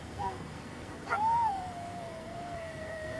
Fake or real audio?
fake